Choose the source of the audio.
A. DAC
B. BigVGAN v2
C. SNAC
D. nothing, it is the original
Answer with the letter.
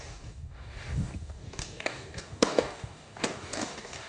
A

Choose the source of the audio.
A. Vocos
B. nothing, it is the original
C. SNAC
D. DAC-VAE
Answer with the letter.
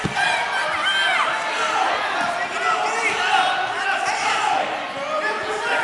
B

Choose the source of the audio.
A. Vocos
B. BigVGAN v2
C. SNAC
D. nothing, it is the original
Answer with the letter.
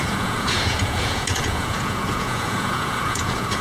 A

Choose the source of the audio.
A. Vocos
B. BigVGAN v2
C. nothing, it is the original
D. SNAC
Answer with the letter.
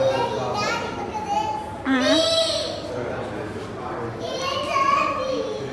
C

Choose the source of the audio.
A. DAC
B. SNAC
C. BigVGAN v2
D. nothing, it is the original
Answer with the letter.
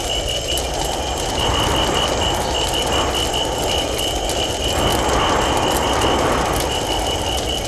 D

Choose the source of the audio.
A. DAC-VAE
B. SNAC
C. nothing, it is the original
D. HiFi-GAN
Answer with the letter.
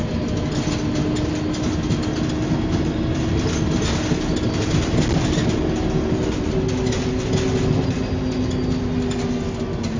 C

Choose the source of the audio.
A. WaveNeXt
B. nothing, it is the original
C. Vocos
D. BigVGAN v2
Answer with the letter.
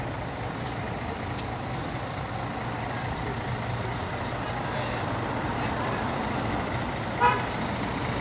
D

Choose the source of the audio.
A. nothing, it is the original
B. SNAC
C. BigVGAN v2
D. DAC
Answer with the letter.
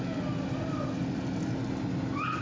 A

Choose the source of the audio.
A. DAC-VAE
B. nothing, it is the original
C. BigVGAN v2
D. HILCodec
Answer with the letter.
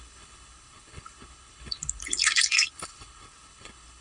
D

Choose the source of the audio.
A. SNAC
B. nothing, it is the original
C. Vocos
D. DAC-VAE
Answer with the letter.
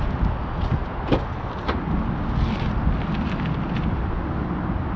B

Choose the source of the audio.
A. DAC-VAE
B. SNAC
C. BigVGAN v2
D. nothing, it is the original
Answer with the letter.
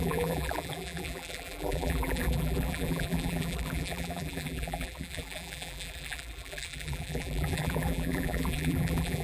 C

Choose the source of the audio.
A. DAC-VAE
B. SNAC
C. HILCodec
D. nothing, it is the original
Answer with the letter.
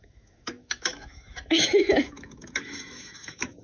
A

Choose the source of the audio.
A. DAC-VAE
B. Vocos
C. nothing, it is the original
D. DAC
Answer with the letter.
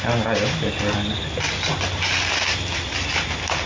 C